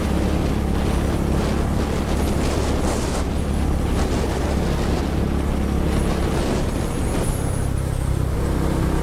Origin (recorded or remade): recorded